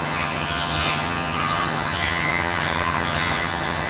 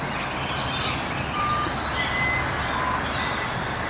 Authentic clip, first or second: second